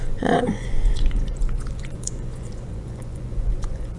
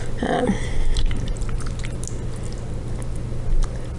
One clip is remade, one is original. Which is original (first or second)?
second